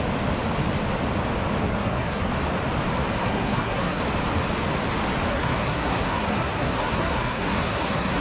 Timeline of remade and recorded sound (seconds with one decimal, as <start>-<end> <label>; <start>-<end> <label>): 0.0-1.6 recorded; 1.6-2.3 remade; 2.3-3.2 recorded; 3.2-4.0 remade; 4.0-5.3 recorded; 5.3-8.2 remade